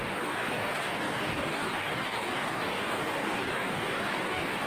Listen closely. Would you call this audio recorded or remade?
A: remade